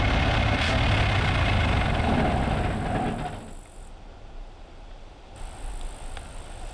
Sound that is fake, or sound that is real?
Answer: fake